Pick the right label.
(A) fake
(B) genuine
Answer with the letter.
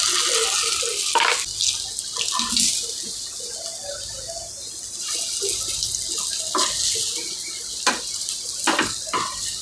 B